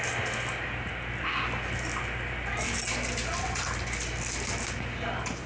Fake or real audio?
real